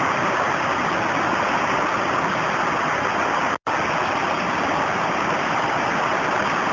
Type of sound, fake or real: real